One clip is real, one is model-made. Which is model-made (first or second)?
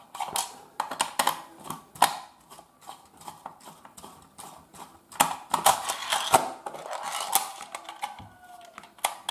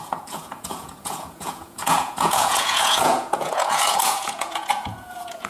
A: second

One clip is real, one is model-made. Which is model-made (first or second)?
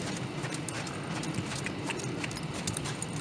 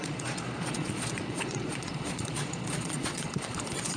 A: second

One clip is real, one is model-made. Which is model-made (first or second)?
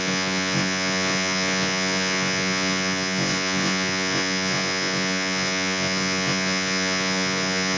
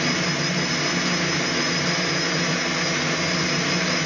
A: first